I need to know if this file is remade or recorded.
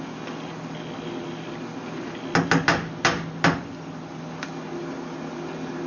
recorded